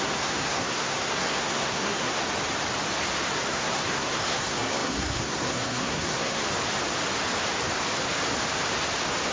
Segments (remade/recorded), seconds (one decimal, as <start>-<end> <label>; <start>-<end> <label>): 0.0-2.2 remade; 2.2-3.5 recorded; 3.5-6.4 remade; 6.4-9.3 recorded